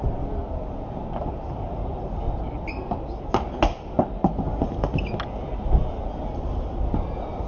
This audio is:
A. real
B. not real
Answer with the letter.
A